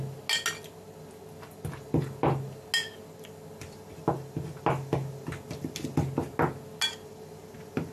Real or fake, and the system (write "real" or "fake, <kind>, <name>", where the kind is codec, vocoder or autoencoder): real